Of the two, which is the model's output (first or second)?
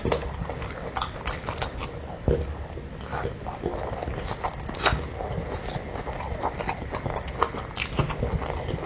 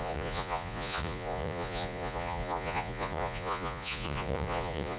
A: second